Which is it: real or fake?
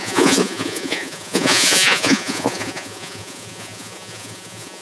fake